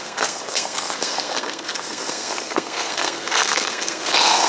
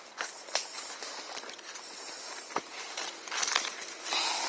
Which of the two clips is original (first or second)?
second